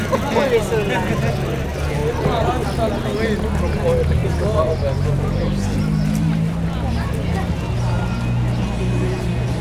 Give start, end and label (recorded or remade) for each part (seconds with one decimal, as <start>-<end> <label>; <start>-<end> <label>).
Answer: 0.0-9.6 recorded